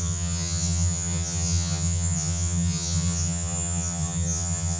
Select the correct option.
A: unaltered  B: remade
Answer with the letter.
B